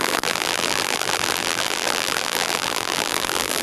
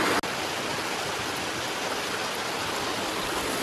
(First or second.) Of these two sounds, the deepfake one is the first